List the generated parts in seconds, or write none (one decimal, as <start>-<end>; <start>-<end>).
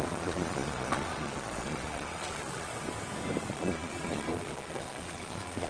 0.0-2.7; 3.4-5.7